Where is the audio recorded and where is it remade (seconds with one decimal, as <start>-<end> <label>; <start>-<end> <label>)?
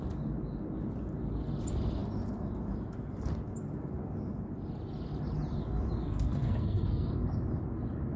0.0-6.0 recorded; 6.0-7.1 remade; 7.1-8.2 recorded